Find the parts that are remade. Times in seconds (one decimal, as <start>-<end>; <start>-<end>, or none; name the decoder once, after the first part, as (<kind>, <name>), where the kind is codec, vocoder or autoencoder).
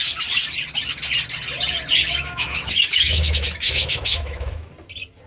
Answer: 2.1-4.7 (autoencoder, DAC-VAE)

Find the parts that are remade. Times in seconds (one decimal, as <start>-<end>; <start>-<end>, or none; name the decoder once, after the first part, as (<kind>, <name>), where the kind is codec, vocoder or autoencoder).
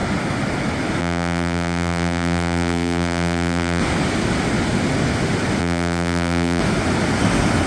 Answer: 1.0-3.8 (vocoder, BigVGAN v2); 5.6-6.6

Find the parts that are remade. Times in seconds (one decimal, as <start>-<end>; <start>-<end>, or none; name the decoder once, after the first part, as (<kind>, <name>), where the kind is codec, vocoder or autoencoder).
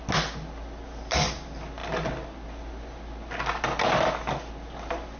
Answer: none